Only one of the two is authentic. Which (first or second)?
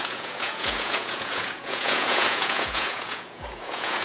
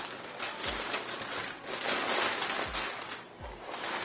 second